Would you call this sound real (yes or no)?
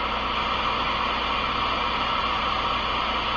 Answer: yes